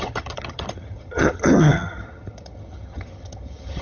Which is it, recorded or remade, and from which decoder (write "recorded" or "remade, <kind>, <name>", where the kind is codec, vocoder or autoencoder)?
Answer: remade, vocoder, HiFi-GAN